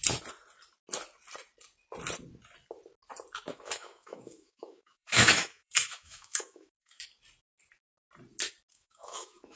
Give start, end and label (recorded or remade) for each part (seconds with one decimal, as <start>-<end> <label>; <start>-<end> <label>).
0.0-3.5 recorded; 3.5-7.0 remade; 7.0-8.7 recorded; 8.7-9.6 remade